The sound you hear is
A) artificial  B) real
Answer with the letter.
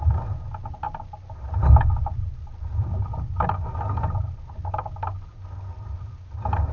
B